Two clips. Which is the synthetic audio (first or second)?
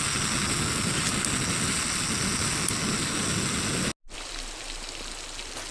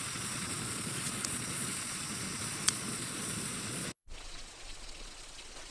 second